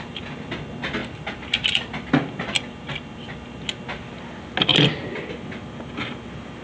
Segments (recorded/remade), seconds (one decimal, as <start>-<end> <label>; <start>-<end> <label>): 0.0-6.6 recorded